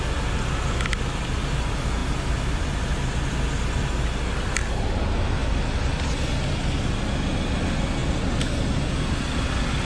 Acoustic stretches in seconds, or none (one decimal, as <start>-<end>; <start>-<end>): 0.0-9.8